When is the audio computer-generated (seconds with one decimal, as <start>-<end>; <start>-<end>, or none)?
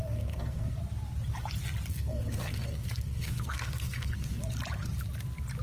0.0-0.8; 1.9-4.4